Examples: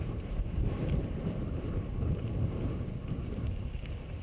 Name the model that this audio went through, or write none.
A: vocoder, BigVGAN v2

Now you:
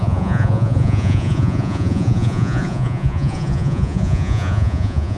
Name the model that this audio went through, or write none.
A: vocoder, Vocos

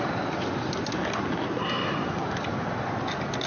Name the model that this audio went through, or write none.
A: none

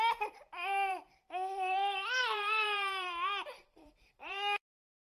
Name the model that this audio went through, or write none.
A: vocoder, BigVGAN v2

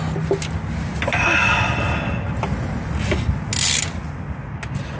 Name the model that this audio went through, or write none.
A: none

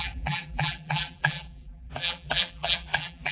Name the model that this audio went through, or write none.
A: vocoder, BigVGAN v2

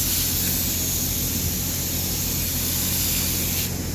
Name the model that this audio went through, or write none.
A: none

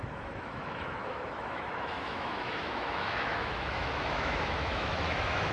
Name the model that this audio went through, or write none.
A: autoencoder, DAC-VAE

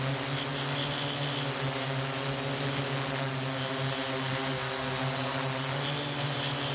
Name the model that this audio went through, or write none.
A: none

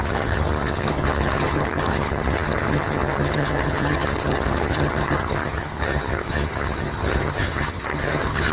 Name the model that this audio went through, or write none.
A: vocoder, HiFi-GAN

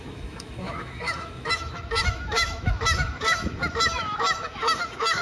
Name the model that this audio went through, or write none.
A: autoencoder, DAC-VAE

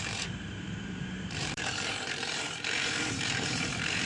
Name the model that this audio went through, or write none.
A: vocoder, BigVGAN v2